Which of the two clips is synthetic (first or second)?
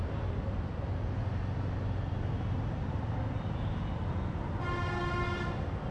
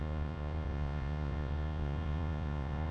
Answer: second